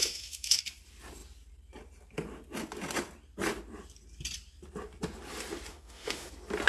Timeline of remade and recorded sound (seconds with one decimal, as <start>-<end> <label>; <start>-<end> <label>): 0.0-0.6 remade; 0.6-5.7 recorded; 5.7-6.3 remade; 6.3-6.7 recorded